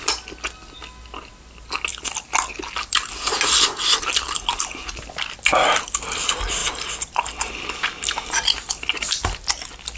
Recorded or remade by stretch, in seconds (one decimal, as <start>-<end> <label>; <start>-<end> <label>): 0.0-10.0 recorded